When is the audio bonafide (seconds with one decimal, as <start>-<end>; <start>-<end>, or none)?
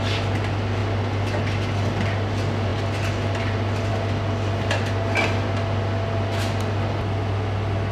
0.0-7.9